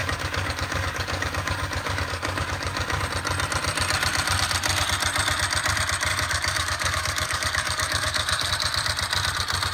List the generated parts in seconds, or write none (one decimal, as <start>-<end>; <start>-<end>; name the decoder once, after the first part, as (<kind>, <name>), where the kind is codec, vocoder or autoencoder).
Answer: 0.0-3.0 (codec, DAC); 6.1-8.5